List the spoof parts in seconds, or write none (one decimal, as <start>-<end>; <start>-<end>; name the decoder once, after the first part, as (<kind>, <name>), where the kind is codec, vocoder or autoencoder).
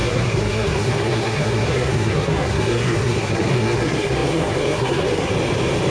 0.0-5.3 (codec, SNAC)